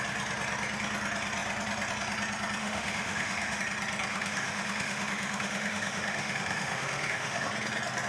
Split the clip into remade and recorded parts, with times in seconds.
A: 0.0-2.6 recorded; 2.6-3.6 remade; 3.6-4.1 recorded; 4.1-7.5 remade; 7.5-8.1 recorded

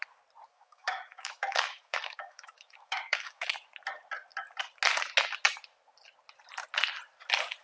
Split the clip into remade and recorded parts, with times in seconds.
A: 0.0-0.5 recorded; 0.5-3.5 remade; 3.5-7.6 recorded

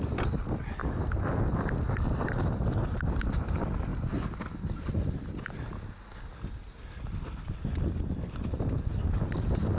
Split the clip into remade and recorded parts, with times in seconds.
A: 0.0-9.8 recorded

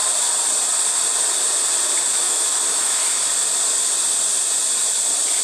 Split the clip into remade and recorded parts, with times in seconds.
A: 0.0-2.1 recorded; 2.1-3.3 remade; 3.3-5.4 recorded